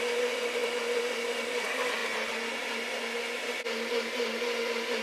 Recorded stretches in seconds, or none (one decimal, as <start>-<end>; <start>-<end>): 2.0-5.0